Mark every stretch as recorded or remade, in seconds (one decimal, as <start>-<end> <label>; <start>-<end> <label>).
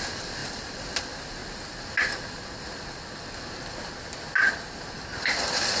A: 0.0-1.4 remade; 1.4-4.9 recorded; 4.9-5.8 remade